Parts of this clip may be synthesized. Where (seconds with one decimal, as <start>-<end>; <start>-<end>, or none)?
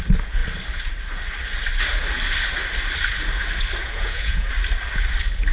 3.8-4.5